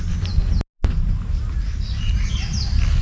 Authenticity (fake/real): real